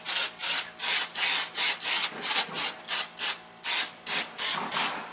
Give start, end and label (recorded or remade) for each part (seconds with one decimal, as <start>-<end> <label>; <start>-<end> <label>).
0.0-5.1 recorded